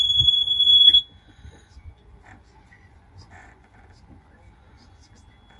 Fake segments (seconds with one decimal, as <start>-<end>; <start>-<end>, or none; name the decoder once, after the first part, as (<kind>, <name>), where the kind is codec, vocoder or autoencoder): 0.0-5.6 (vocoder, Vocos)